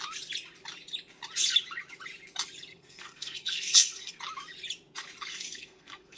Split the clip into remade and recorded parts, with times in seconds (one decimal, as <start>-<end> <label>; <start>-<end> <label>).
0.0-2.7 recorded; 2.7-4.2 remade; 4.2-5.3 recorded; 5.3-6.2 remade